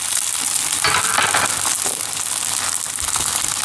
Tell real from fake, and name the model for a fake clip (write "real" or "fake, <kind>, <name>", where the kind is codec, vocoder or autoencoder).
fake, vocoder, BigVGAN v2